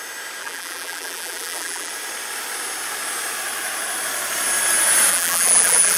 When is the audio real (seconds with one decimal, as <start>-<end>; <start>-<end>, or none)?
0.0-0.4; 1.9-5.1